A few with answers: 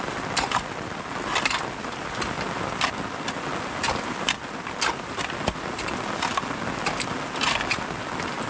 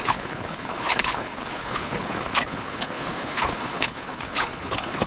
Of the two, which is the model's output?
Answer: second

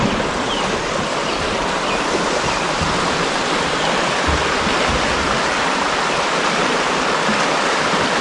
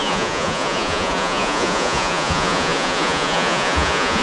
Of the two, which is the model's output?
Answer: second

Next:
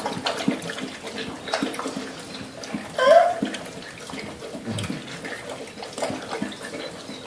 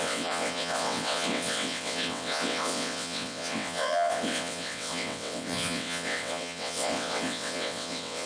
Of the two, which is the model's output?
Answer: second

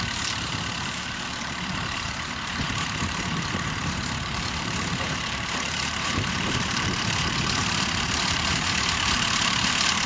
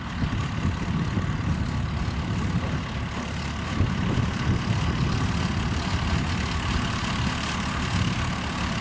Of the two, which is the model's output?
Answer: first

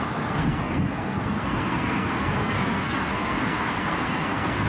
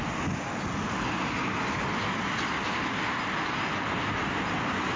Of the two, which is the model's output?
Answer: first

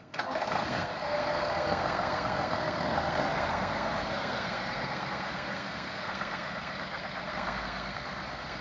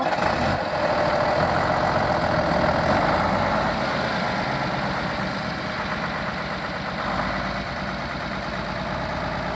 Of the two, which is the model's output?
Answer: first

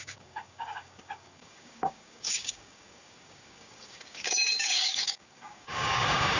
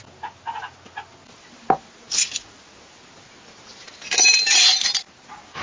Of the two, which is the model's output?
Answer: first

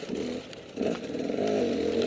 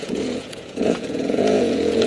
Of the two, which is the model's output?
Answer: second